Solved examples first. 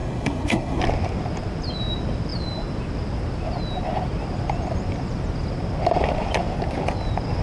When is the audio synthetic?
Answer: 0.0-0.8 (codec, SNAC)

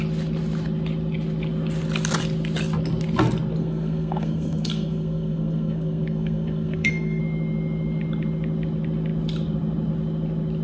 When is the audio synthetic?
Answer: 3.6-7.2 (codec, SNAC)

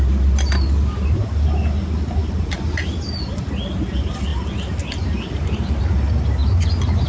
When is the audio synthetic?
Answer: none